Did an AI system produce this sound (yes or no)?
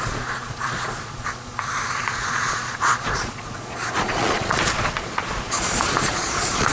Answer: yes